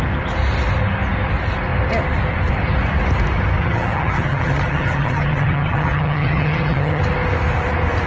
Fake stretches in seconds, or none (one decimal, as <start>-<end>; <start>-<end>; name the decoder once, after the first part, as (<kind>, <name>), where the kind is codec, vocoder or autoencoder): 3.6-7.0 (vocoder, HiFi-GAN)